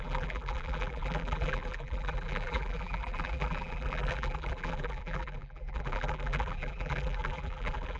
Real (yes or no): no